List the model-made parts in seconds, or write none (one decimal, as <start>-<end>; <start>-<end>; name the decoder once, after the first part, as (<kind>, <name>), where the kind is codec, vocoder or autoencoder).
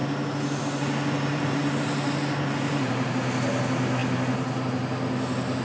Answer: 1.3-3.1 (vocoder, BigVGAN v2)